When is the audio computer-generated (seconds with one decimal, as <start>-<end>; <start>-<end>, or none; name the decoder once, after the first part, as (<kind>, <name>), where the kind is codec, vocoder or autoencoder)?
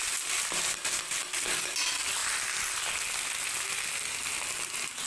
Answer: none